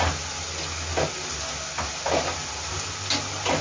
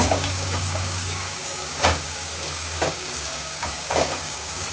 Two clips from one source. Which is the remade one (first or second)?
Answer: second